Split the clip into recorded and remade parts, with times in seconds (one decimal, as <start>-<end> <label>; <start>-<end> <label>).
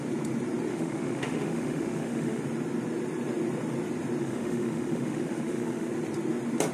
0.0-0.7 recorded; 0.7-2.4 remade; 2.4-4.2 recorded; 4.2-5.9 remade; 5.9-6.7 recorded